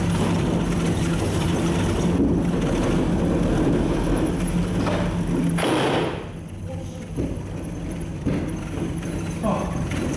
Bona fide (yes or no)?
yes